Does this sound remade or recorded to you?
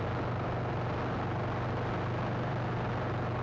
recorded